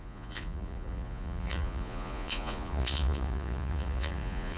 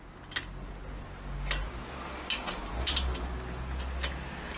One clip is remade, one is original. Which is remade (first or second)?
first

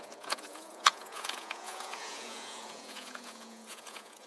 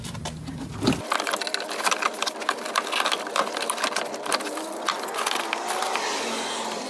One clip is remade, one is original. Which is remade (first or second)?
first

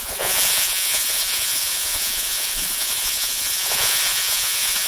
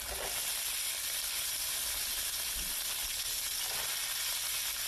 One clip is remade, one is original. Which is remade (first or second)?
first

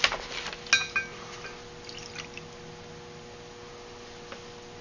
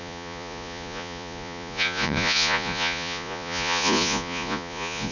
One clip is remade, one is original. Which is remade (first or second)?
second